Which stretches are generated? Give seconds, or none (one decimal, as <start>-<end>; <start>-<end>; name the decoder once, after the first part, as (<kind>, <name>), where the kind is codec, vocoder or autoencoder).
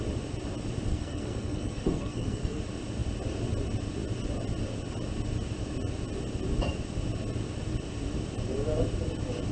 0.9-2.6 (codec, SNAC)